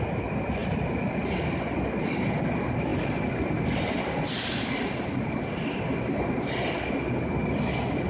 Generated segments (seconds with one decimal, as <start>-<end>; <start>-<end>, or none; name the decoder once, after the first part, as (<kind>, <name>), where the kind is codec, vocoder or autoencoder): 0.6-1.3 (vocoder, BigVGAN v2); 2.9-5.8